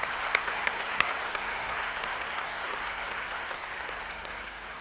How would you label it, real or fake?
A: fake